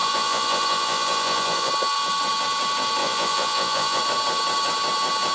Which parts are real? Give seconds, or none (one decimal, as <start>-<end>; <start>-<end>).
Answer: 1.7-3.0; 4.0-5.3